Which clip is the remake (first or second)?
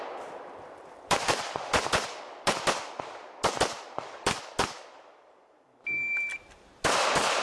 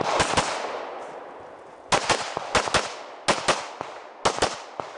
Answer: first